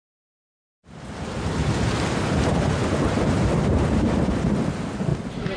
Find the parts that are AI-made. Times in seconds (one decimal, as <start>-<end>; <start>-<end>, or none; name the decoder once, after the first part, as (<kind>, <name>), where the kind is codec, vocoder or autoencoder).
5.1-5.6 (vocoder, BigVGAN v2)